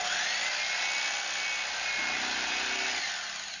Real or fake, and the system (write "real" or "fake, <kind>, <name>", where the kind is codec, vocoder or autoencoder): real